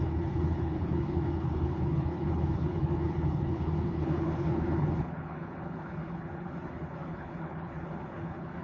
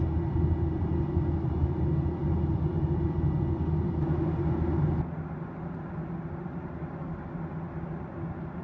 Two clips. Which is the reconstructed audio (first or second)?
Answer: first